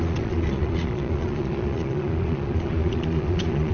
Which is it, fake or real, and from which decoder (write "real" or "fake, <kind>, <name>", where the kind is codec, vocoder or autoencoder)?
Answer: fake, vocoder, Vocos